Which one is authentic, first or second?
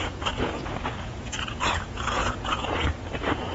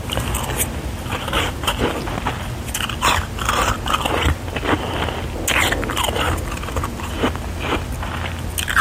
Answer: second